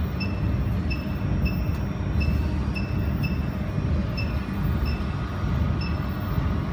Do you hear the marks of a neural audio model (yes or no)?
no